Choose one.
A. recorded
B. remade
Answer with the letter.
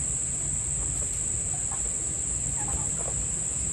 A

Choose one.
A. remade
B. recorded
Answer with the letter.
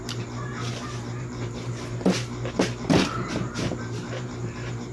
A